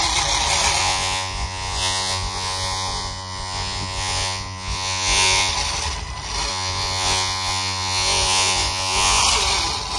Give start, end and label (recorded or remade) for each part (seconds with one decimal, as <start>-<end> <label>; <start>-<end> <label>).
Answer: 0.0-0.8 recorded; 0.8-5.5 remade; 5.5-6.5 recorded; 6.5-9.2 remade; 9.2-10.0 recorded